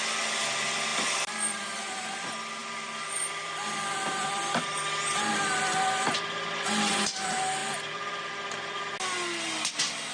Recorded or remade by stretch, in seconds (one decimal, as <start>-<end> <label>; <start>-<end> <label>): 0.0-0.9 recorded; 0.9-1.8 remade; 1.8-2.6 recorded; 2.6-5.3 remade; 5.3-7.6 recorded; 7.6-8.3 remade; 8.3-10.1 recorded